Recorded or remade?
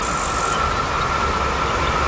recorded